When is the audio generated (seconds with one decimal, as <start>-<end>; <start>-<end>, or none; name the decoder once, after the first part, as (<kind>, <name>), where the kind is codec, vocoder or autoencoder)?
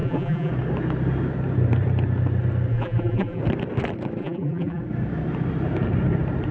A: 0.0-0.5 (vocoder, BigVGAN v2); 2.7-3.4; 4.2-4.8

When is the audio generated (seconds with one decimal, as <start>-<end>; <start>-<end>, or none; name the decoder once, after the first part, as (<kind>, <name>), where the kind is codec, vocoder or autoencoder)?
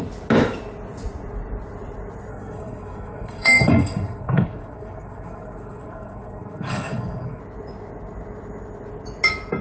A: 2.3-7.4 (codec, SNAC)